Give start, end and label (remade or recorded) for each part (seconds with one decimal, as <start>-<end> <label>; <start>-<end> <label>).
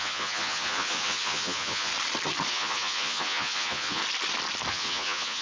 0.0-1.9 remade; 1.9-2.5 recorded; 2.5-4.0 remade; 4.0-4.7 recorded; 4.7-5.4 remade